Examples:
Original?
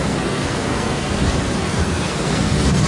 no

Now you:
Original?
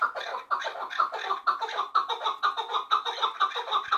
yes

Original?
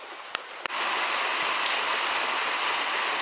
yes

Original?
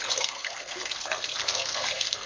no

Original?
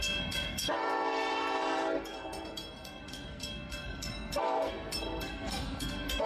no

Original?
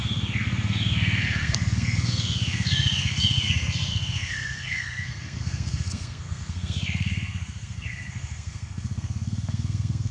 no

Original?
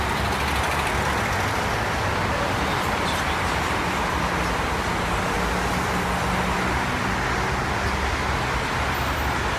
yes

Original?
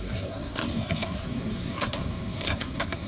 no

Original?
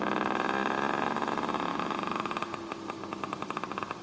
yes